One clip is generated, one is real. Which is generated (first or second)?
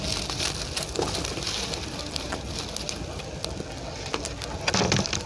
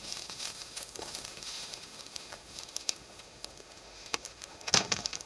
second